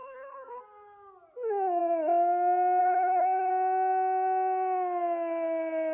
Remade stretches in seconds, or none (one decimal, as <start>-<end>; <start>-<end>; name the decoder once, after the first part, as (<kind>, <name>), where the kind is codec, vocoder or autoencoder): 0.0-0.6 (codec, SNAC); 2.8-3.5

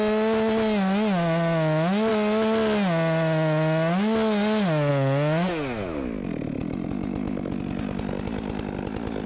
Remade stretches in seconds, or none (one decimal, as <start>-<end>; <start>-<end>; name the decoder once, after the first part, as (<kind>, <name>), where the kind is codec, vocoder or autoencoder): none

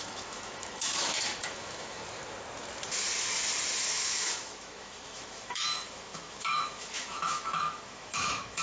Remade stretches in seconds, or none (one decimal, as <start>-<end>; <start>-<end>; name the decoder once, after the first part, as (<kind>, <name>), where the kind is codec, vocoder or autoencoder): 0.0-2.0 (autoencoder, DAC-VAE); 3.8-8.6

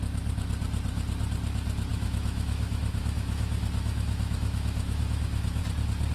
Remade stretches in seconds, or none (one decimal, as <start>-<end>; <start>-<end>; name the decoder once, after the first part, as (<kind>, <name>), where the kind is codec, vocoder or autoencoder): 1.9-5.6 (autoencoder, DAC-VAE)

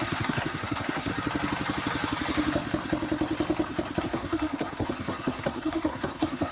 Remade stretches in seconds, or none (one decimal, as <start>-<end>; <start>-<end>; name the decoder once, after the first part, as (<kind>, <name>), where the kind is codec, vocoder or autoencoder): 0.0-1.1 (codec, SNAC); 4.0-6.5

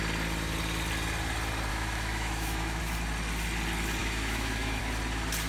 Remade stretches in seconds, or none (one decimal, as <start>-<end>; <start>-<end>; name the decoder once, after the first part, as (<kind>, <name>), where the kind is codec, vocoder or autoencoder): 1.7-2.8 (autoencoder, DAC-VAE); 4.0-4.8